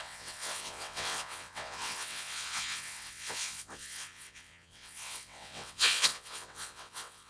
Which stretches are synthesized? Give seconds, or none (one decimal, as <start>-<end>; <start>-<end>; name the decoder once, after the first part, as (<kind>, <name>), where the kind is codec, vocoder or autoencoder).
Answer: 0.0-7.3 (vocoder, WaveNeXt)